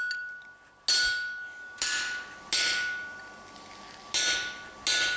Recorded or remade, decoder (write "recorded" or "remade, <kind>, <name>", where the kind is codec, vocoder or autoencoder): recorded